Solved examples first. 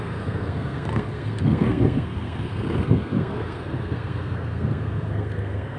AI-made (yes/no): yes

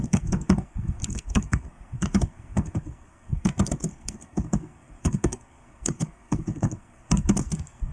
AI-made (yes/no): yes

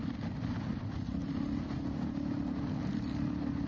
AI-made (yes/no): no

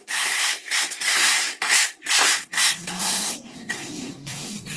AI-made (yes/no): yes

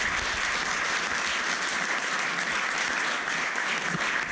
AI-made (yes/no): no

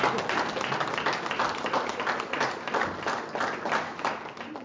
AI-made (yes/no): no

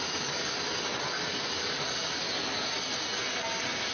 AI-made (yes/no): no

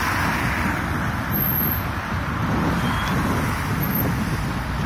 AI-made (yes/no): no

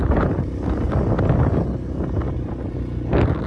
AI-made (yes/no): no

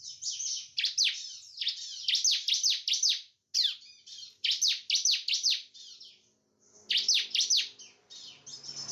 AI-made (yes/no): no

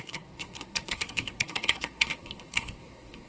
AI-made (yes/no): yes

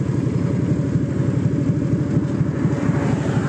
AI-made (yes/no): no